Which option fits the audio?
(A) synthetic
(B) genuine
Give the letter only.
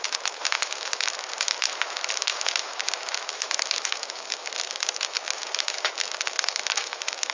A